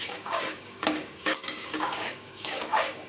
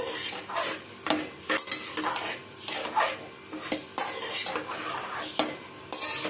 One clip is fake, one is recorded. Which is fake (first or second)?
first